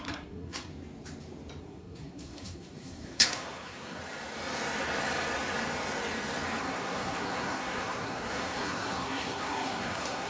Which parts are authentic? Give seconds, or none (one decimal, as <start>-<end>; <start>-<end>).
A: 0.7-1.6; 4.0-6.6